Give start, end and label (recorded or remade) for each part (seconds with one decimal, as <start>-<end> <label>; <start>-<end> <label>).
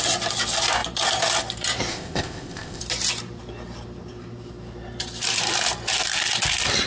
0.0-1.9 recorded; 1.9-2.8 remade; 2.8-6.9 recorded